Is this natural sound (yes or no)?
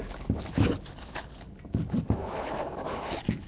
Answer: yes